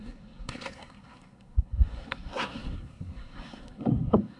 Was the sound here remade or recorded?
remade